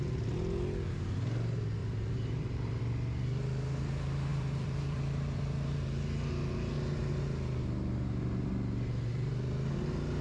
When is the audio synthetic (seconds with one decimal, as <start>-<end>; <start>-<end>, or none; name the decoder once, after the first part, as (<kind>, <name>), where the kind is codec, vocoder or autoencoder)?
1.8-2.8 (vocoder, BigVGAN v2); 4.3-7.1